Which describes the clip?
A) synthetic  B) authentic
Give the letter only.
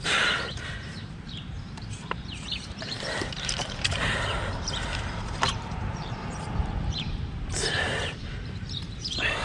A